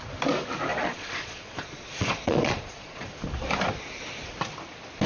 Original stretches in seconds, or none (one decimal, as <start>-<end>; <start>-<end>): 0.0-0.7; 3.1-5.1